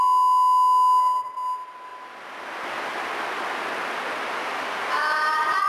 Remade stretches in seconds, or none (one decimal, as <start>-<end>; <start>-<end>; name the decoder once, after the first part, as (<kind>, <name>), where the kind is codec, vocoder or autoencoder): none